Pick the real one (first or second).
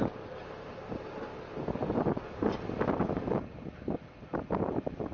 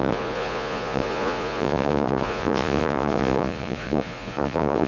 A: first